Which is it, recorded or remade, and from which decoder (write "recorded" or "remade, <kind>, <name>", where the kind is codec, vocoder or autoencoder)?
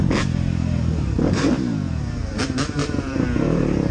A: remade, vocoder, BigVGAN v2